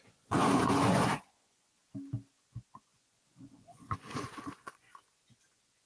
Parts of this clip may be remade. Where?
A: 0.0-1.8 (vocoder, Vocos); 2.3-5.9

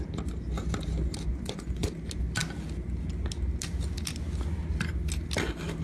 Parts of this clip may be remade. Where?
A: 1.3-1.9 (vocoder, Vocos)

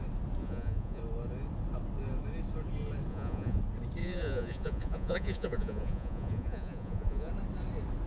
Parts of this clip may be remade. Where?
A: 0.4-1.0 (vocoder, Vocos); 3.1-3.6; 4.0-7.3

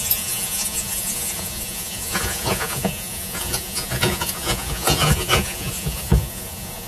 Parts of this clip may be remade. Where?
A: 0.0-6.9 (vocoder, Vocos)